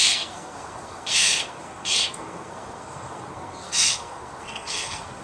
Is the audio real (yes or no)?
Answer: no